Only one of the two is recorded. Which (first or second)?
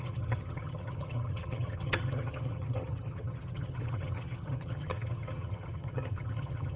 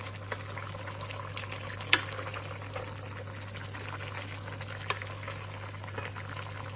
second